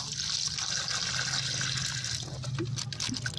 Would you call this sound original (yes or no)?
yes